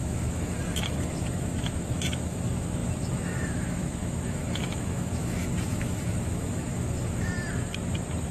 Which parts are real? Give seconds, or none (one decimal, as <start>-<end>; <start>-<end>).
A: 7.3-8.3